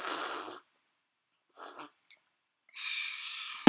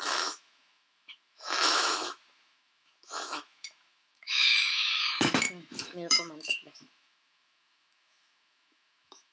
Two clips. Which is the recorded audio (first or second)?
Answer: first